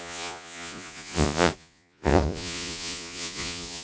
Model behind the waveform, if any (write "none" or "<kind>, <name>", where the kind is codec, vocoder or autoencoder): vocoder, Vocos